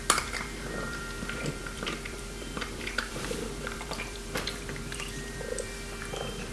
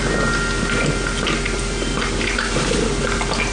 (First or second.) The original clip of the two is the second